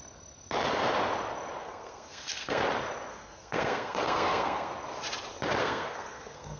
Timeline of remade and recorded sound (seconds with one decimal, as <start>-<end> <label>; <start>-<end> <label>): 0.0-1.6 recorded; 1.6-2.6 remade; 2.6-3.1 recorded; 3.1-4.7 remade; 4.7-5.6 recorded; 5.6-6.6 remade